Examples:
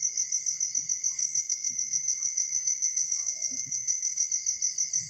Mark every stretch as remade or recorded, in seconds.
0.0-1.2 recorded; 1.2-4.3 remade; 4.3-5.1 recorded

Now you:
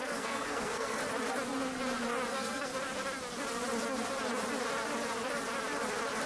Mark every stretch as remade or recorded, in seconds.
0.0-1.0 remade; 1.0-2.3 recorded; 2.3-2.7 remade; 2.7-6.3 recorded

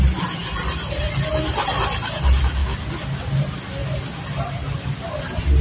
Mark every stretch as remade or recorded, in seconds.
0.0-5.6 recorded

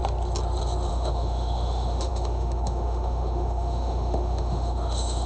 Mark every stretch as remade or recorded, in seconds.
0.0-0.9 recorded; 0.9-5.3 remade

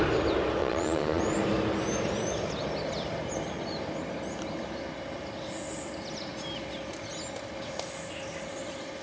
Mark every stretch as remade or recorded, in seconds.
0.0-0.6 recorded; 0.6-1.2 remade; 1.2-9.0 recorded

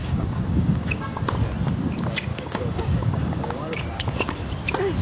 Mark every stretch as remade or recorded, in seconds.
0.0-1.2 remade; 1.2-2.3 recorded; 2.3-4.2 remade; 4.2-5.0 recorded

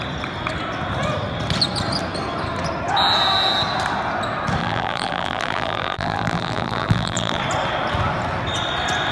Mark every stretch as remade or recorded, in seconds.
0.0-4.6 recorded; 4.6-7.4 remade; 7.4-9.1 recorded

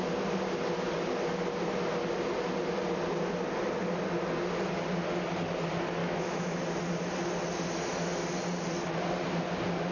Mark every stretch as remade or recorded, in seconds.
0.0-6.0 recorded; 6.0-6.6 remade; 6.6-9.9 recorded